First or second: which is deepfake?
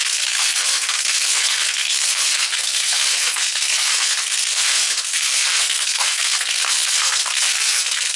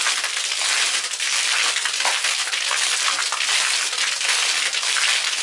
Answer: first